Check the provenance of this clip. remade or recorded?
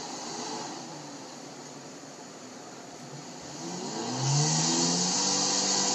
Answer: recorded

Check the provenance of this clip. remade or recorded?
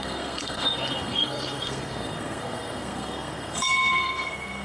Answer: remade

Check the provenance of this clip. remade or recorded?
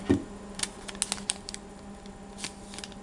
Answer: recorded